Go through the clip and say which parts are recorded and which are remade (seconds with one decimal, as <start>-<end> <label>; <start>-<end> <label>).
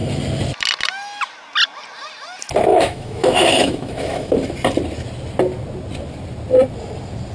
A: 0.0-2.7 recorded; 2.7-4.3 remade; 4.3-7.3 recorded